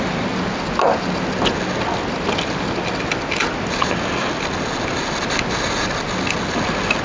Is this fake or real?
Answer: real